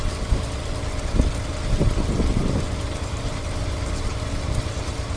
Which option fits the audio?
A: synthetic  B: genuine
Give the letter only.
B